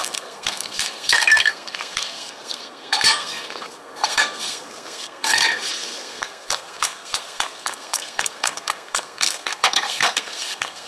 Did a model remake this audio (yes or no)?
yes